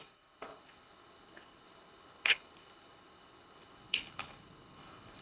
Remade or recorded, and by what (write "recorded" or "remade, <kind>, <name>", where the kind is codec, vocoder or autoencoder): remade, codec, HILCodec